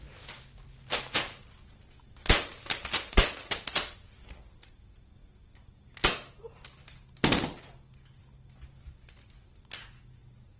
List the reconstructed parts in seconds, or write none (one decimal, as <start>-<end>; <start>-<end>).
none